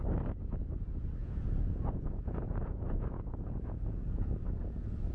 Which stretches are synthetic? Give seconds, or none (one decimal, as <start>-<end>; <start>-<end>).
1.2-4.3